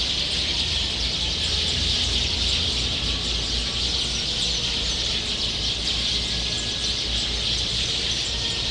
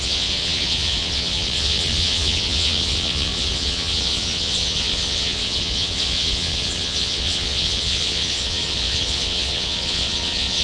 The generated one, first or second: second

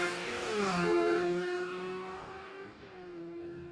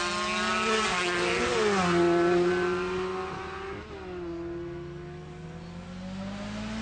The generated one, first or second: first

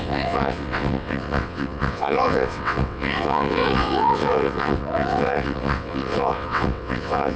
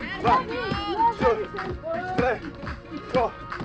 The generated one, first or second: first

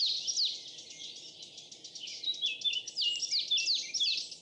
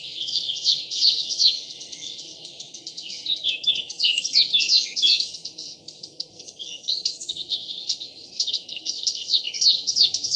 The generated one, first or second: second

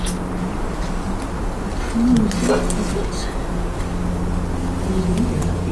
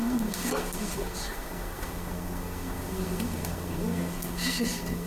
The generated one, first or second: second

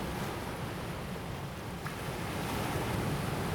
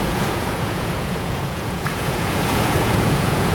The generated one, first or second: second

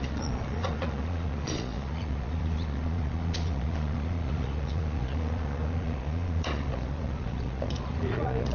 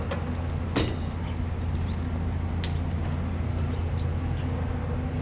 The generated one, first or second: first